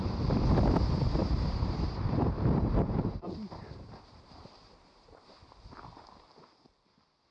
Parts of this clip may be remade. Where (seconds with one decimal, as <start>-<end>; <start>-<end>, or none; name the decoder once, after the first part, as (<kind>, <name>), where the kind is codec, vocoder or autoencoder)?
1.2-5.6 (vocoder, BigVGAN v2)